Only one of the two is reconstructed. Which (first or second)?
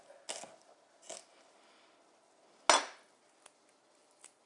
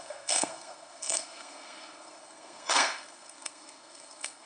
second